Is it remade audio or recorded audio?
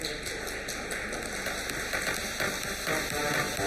recorded